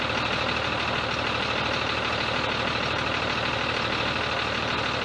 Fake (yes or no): no